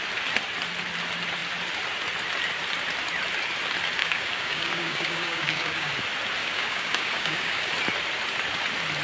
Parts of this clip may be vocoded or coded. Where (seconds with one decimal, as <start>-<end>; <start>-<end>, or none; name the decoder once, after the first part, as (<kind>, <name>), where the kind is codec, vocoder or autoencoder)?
4.0-5.9 (codec, DAC); 6.4-7.7

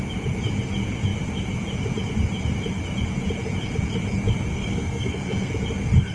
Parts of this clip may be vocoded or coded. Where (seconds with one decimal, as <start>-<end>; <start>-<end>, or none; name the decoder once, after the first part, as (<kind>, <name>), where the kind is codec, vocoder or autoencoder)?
4.5-5.5 (codec, SNAC)

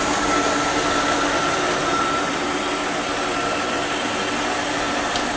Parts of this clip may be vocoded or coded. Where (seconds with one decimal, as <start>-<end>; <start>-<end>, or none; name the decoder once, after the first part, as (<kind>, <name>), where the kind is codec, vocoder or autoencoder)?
1.8-2.4 (vocoder, BigVGAN v2)

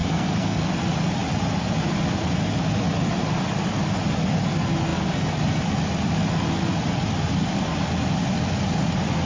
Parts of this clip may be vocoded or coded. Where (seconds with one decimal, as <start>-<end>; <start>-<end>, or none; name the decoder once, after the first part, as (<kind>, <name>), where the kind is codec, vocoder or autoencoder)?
0.0-0.7 (codec, SNAC)

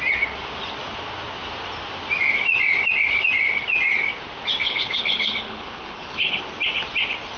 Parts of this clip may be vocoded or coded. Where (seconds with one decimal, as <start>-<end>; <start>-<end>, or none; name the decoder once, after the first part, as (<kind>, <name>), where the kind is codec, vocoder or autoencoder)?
4.6-6.4 (codec, HILCodec)